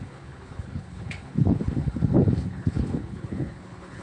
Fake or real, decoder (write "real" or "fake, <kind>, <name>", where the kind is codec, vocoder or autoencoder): fake, codec, HILCodec